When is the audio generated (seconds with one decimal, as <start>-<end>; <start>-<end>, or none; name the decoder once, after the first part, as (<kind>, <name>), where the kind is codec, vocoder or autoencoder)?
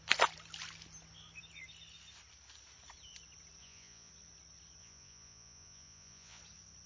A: 3.6-4.1 (vocoder, Vocos); 4.8-6.4